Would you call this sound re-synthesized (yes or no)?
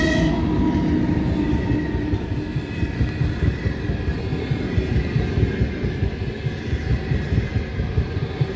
no